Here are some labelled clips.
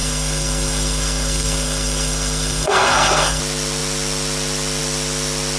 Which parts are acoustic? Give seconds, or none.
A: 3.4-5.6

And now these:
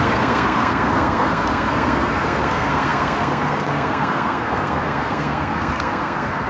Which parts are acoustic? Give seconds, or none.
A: none